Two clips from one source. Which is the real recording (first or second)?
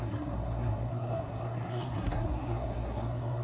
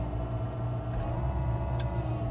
second